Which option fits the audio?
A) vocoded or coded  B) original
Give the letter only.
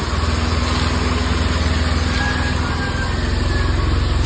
B